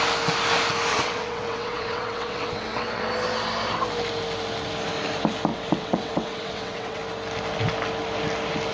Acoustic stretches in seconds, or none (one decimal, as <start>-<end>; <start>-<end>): 0.0-0.9; 3.0-5.5; 7.0-8.7